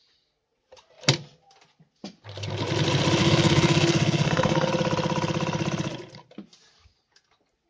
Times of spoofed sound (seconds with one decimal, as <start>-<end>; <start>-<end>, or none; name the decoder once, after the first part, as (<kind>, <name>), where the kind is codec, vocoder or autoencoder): 3.2-4.7 (codec, SNAC)